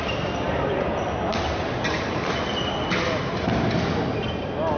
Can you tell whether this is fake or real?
real